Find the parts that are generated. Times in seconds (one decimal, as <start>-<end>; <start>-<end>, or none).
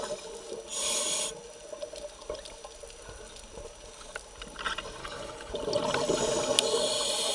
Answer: 5.0-5.5